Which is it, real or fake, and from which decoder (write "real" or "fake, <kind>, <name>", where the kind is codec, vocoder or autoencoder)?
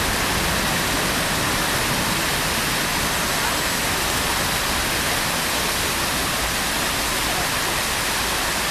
real